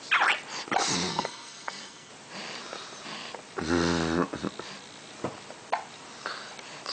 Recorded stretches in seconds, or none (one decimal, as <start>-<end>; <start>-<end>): 0.0-1.1; 2.1-6.9